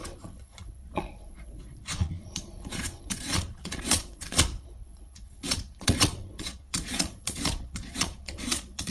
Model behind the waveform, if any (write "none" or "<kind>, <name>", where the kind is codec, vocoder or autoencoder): vocoder, Vocos